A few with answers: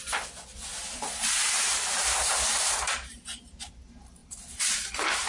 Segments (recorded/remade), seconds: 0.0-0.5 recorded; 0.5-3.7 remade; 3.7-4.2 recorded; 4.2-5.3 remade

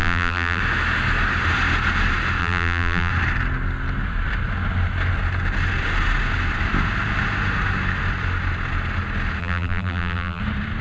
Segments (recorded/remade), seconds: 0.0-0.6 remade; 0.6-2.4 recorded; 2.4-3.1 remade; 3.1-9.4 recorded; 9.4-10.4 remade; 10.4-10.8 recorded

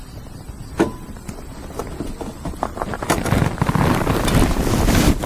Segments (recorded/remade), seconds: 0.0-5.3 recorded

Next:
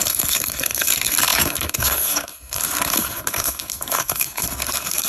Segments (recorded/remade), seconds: 0.0-5.1 remade

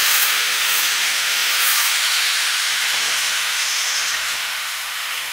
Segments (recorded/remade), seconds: 0.0-5.3 remade

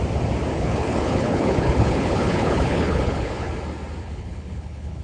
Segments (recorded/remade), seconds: 0.0-0.5 recorded; 0.5-3.5 remade; 3.5-4.0 recorded; 4.0-5.0 remade

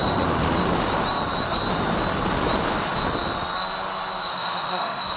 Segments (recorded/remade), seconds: 0.0-4.3 recorded; 4.3-5.2 remade

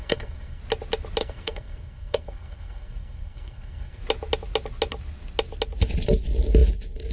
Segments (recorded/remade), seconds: 0.0-0.6 remade; 0.6-1.2 recorded; 1.2-4.0 remade; 4.0-7.1 recorded